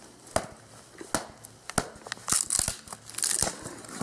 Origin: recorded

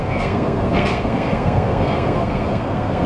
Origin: remade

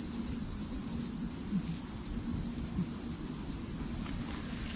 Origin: recorded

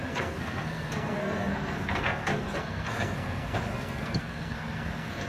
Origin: remade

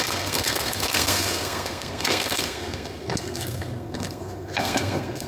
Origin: remade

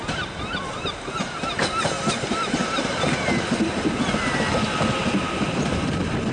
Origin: recorded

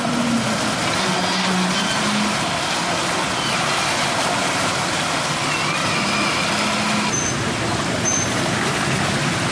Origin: recorded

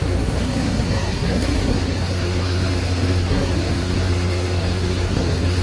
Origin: remade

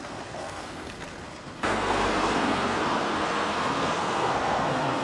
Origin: remade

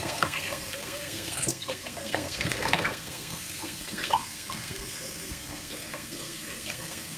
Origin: remade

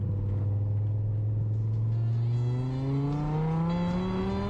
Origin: recorded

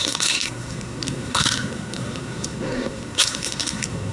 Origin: remade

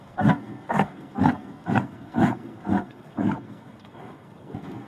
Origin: remade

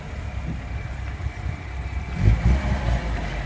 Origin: recorded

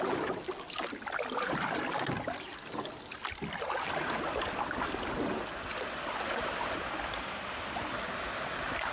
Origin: recorded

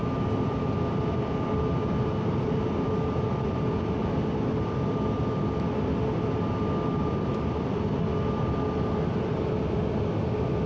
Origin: recorded